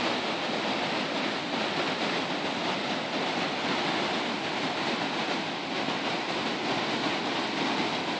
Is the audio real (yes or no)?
yes